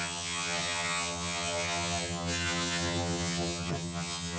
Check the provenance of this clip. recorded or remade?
remade